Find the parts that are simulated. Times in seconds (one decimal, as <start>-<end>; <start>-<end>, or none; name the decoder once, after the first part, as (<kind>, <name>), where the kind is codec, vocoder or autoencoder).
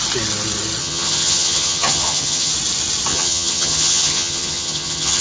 0.8-2.5 (vocoder, HiFi-GAN); 3.1-5.2